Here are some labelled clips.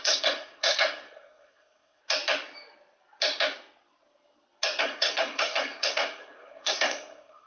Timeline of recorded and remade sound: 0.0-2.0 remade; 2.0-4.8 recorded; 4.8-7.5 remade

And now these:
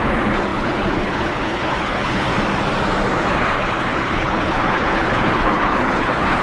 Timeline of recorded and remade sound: 0.0-2.3 remade; 2.3-3.2 recorded; 3.2-6.4 remade

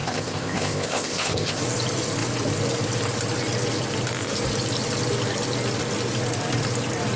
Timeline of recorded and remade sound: 0.0-1.6 remade; 1.6-7.2 recorded

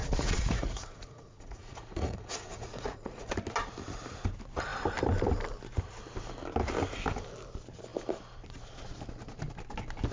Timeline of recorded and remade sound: 0.0-3.3 remade; 3.3-10.1 recorded